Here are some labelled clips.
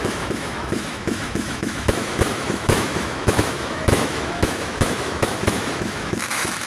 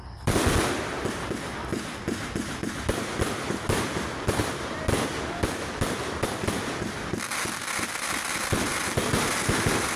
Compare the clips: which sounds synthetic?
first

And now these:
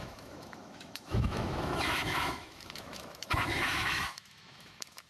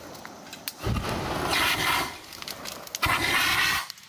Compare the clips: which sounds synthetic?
first